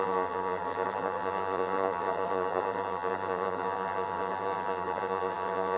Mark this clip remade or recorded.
remade